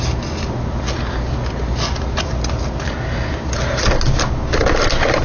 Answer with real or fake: real